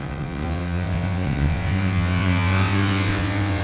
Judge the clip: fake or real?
fake